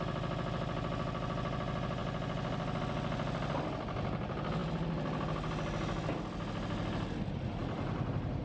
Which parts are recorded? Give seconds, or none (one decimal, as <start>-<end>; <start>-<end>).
0.0-8.4